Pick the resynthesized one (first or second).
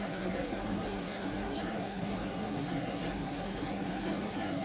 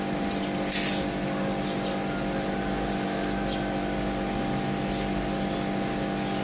first